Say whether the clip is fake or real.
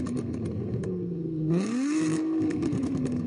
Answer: fake